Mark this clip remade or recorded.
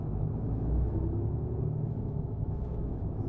remade